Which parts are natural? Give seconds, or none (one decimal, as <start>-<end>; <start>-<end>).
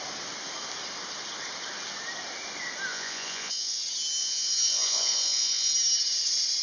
0.0-2.9; 3.8-4.2; 5.7-6.6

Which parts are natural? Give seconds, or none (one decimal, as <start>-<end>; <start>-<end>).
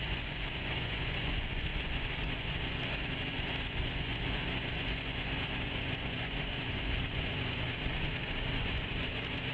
none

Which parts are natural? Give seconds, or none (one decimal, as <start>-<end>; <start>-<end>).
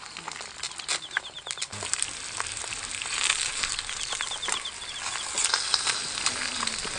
0.0-7.0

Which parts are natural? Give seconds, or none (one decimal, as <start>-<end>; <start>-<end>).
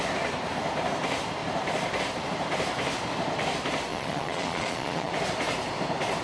0.0-3.9; 5.1-6.2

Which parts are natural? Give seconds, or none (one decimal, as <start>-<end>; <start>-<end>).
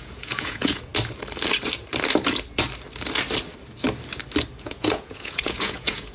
0.9-4.6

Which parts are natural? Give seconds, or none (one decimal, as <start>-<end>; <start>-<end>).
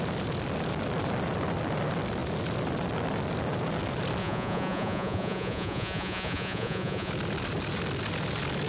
0.0-4.2; 7.1-8.7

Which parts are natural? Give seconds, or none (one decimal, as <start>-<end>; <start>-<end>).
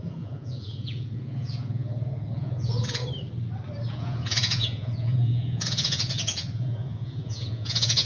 3.0-3.9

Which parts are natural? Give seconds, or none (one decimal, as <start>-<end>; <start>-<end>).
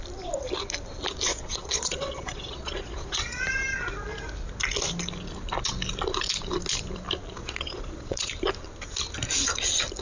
0.0-1.3; 3.4-7.4; 8.3-10.0